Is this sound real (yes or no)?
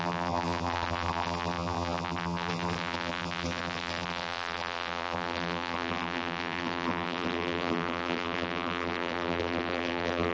no